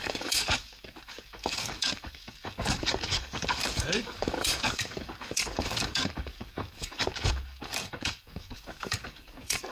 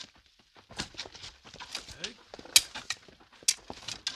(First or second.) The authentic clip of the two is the second